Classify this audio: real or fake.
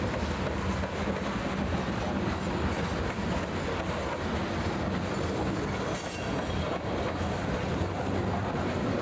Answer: real